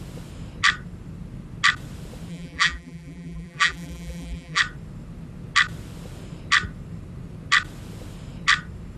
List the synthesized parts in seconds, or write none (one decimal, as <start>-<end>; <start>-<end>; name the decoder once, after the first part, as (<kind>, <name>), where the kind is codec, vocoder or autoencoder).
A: 2.3-4.6 (vocoder, BigVGAN v2)